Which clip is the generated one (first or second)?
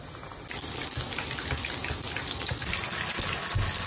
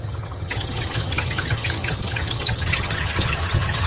second